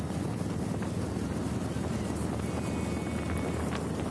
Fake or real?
real